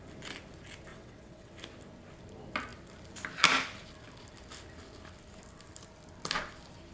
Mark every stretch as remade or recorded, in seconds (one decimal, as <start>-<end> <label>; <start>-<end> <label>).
0.0-0.9 recorded; 0.9-1.5 remade; 1.5-6.9 recorded